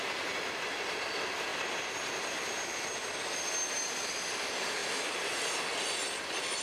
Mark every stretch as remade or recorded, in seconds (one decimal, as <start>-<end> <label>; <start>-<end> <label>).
0.0-6.6 recorded